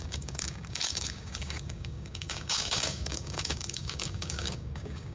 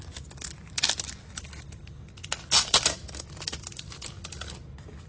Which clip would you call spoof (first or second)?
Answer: first